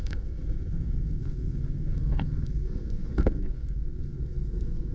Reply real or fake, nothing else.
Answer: fake